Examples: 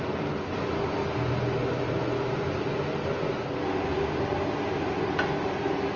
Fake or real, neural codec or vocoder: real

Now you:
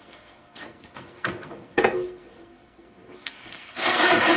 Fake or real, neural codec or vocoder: fake, codec, SNAC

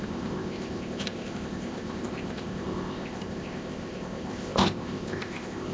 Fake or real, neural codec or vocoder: fake, codec, ZipCodec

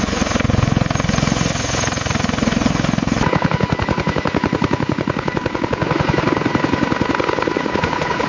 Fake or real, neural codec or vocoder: real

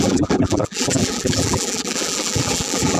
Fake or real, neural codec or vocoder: fake, vocoder, BigVGAN v2